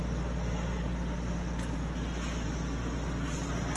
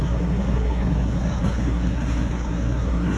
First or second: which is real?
first